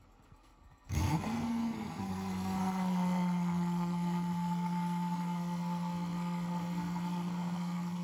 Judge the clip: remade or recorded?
remade